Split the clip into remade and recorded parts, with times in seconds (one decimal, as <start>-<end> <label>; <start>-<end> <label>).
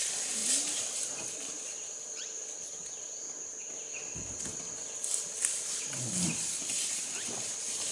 0.0-7.9 recorded